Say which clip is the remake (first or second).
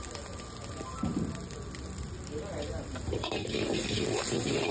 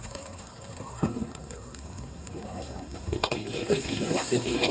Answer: second